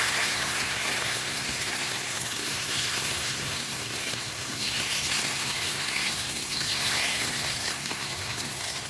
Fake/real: fake